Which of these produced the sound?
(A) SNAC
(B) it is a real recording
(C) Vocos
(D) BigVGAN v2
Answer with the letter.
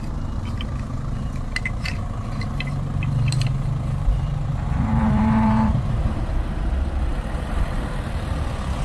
D